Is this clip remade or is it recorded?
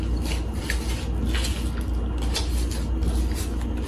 recorded